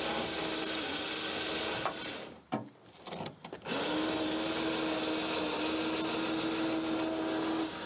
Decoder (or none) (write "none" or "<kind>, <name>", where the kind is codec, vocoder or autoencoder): none